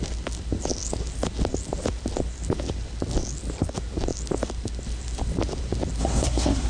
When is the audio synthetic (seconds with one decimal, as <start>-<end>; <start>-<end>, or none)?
6.0-6.7